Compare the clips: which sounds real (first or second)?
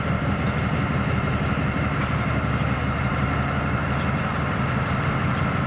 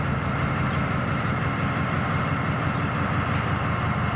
second